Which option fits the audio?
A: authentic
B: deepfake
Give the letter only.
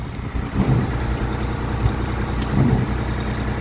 A